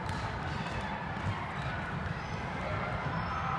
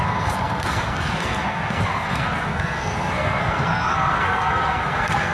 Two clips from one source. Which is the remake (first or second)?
second